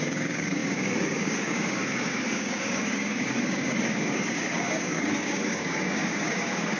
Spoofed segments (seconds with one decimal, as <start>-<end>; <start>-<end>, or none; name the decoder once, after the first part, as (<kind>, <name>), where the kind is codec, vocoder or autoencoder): 0.0-6.8 (codec, DAC)